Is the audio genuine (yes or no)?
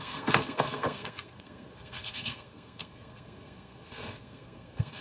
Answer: no